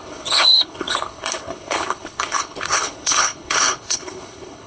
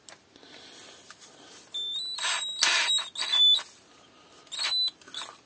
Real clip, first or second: second